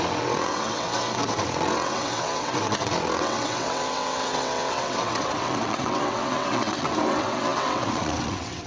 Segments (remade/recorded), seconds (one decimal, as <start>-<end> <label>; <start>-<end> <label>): 0.0-8.7 remade